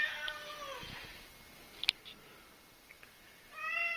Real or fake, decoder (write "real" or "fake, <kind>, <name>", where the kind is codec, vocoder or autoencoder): real